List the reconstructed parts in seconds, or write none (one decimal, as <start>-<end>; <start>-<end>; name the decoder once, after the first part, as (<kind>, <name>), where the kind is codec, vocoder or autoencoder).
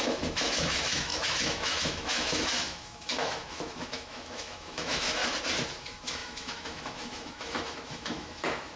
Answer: 0.0-5.2 (autoencoder, DAC-VAE); 5.8-8.8